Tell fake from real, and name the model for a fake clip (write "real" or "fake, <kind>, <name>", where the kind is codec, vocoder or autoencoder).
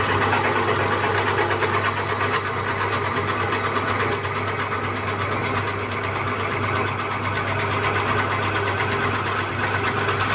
real